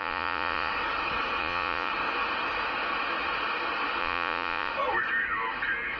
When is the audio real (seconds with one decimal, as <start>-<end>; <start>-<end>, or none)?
0.7-1.4; 1.9-4.0; 4.7-6.0